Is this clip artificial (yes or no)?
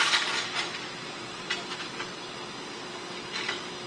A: no